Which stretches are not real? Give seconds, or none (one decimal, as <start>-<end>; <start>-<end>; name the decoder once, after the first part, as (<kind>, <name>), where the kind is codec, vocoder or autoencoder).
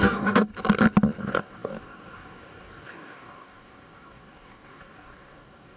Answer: 0.0-0.5 (codec, DAC); 1.2-5.8